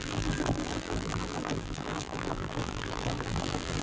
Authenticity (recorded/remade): remade